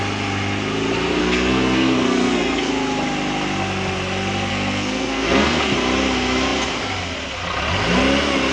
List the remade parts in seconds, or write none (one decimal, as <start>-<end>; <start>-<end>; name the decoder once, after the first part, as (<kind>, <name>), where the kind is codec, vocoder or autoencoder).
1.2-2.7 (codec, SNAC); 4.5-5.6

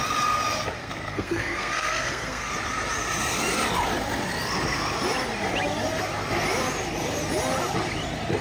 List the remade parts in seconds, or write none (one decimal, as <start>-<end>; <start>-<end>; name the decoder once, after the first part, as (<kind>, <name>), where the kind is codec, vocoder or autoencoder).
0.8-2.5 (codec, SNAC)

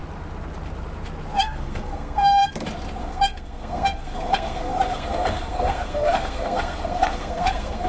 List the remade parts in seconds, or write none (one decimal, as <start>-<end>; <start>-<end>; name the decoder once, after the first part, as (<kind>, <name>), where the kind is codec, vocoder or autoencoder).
1.4-2.4 (codec, SNAC); 3.0-7.9

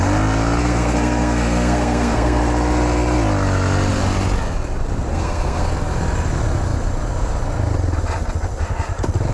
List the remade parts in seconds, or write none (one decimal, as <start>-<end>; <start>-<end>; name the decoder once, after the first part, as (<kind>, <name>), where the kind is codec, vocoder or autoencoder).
0.6-2.4 (codec, SNAC); 5.1-5.7